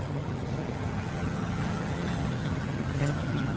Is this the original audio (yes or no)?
no